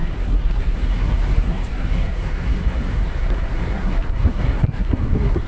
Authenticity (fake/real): fake